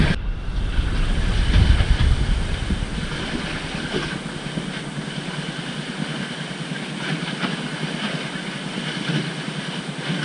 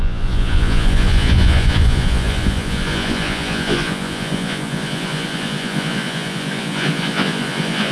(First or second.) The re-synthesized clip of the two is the second